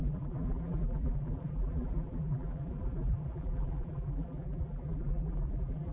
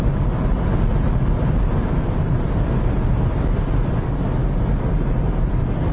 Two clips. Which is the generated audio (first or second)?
first